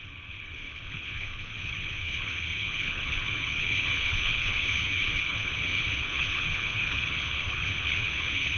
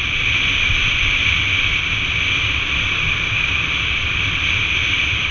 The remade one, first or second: first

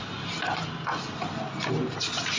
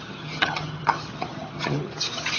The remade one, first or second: second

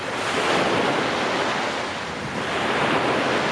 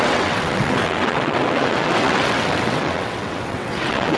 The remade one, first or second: second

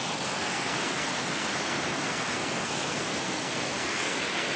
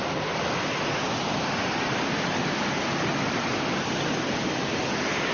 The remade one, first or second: first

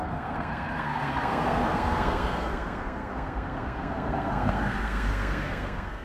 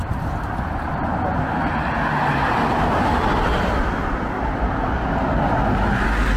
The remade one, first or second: first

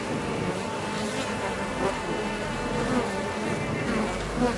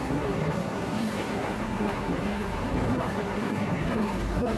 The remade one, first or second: second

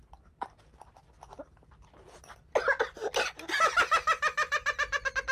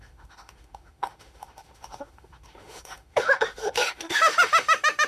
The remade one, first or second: second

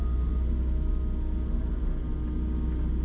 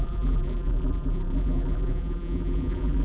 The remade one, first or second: second